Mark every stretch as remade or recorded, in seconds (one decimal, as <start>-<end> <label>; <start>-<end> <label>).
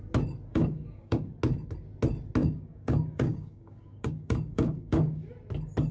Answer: 0.0-0.5 recorded; 0.5-1.3 remade; 1.3-2.4 recorded; 2.4-5.2 remade; 5.2-5.9 recorded